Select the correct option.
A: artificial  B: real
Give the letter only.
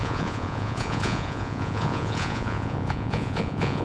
A